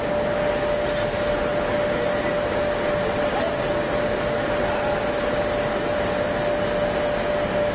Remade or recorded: recorded